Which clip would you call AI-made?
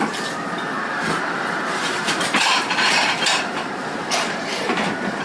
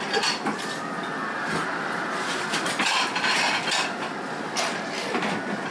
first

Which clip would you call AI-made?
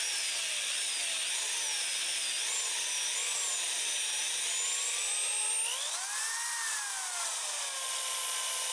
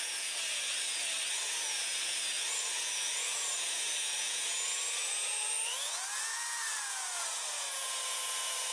second